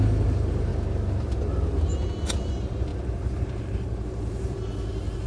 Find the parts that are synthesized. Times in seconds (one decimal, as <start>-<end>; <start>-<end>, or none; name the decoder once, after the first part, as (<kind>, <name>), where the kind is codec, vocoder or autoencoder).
0.0-0.7 (vocoder, BigVGAN v2); 2.3-5.3